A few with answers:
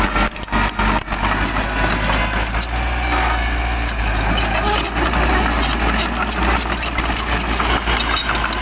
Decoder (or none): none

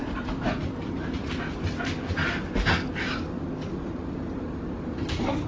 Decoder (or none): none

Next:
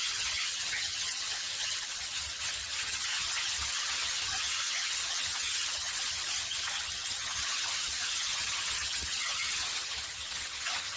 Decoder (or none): vocoder, HiFi-GAN